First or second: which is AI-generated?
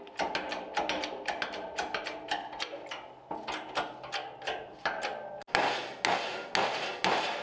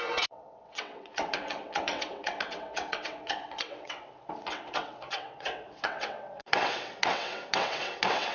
second